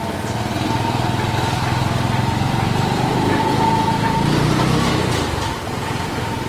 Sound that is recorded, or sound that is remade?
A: recorded